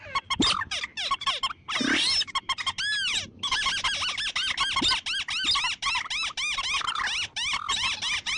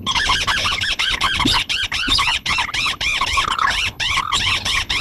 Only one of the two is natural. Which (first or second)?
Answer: first